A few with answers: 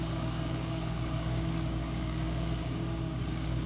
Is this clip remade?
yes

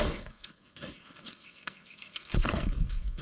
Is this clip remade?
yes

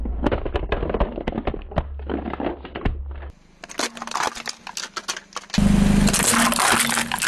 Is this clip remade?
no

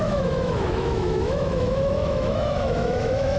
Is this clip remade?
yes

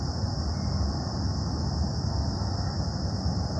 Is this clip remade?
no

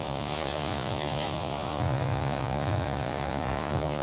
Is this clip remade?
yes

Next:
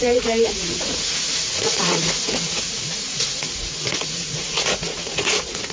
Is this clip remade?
yes